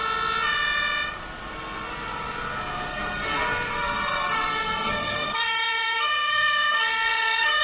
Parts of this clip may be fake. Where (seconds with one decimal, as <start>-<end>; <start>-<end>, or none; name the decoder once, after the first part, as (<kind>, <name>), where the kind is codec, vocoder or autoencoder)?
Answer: 2.9-7.6 (codec, SNAC)

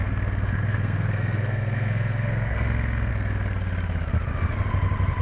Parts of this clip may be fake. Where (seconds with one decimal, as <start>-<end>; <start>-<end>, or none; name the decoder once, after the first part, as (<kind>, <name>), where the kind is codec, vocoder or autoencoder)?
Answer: 0.0-3.1 (codec, SNAC)

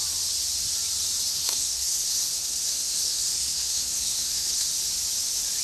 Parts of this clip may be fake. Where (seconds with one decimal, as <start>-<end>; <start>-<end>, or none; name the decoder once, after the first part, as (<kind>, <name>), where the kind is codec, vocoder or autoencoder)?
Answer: 1.3-4.7 (codec, SNAC)

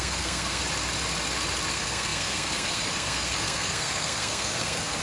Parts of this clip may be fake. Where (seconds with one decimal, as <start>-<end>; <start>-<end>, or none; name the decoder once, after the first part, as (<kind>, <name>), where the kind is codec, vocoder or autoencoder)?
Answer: 0.0-0.6 (codec, SNAC); 1.7-5.0

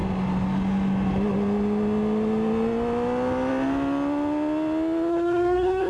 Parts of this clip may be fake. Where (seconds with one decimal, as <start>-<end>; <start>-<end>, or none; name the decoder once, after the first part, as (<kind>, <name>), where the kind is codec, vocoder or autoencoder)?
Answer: 5.1-5.9 (codec, SNAC)

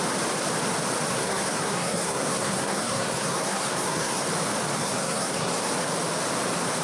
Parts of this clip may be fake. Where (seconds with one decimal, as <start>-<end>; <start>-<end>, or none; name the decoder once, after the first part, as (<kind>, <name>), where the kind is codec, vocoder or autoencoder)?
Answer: 1.1-4.2 (codec, SNAC); 4.8-5.7